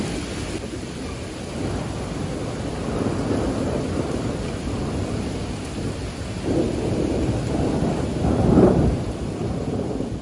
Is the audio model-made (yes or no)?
yes